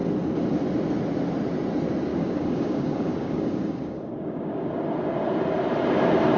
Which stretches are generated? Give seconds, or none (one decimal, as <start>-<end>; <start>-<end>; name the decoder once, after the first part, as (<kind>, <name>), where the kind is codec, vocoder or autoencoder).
2.1-4.7 (codec, DAC)